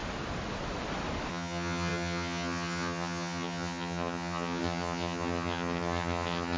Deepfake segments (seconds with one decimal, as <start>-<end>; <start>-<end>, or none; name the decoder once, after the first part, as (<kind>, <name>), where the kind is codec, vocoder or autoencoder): 1.3-6.6 (vocoder, HiFi-GAN)